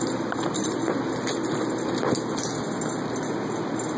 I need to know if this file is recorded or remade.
recorded